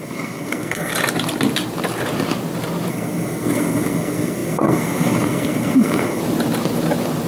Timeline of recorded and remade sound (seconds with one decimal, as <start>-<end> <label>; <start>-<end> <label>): 0.0-0.9 remade; 0.9-2.9 recorded; 2.9-6.2 remade; 6.2-7.3 recorded